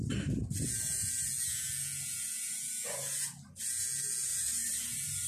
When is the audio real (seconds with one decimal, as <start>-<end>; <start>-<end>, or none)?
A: 0.0-4.3